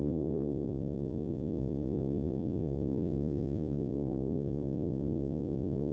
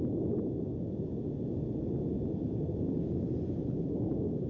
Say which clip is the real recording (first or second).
second